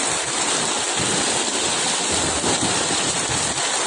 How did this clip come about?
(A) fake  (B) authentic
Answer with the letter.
B